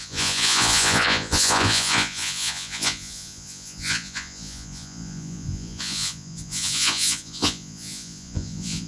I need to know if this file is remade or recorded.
remade